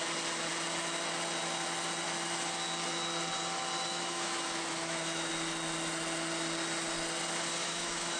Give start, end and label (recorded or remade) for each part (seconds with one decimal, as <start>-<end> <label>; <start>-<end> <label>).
0.0-3.9 recorded; 3.9-5.3 remade; 5.3-7.6 recorded; 7.6-8.2 remade